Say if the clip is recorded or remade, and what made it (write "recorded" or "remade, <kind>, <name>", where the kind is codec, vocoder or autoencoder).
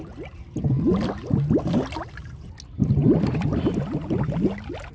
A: recorded